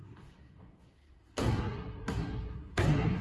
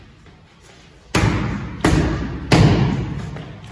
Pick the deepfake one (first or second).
first